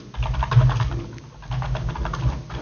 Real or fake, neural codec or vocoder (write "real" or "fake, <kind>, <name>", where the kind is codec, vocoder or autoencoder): real